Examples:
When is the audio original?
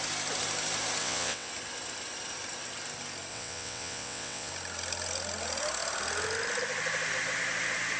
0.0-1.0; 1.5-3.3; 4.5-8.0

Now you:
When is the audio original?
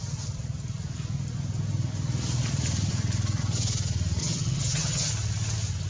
0.0-4.2; 5.1-5.9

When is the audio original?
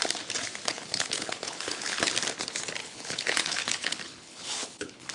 0.0-0.7; 2.1-2.8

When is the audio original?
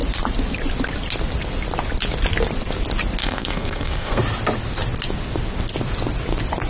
0.0-3.2; 4.2-6.7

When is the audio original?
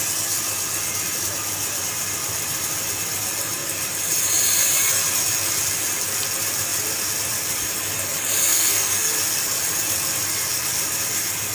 0.0-8.5; 9.1-11.5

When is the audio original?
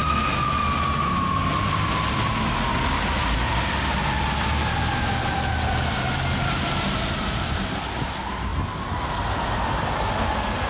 0.0-10.7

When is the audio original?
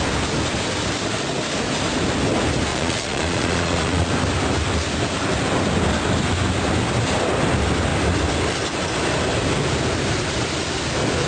0.0-2.7; 4.1-11.3